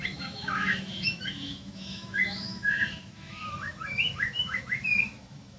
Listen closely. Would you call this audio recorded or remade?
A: remade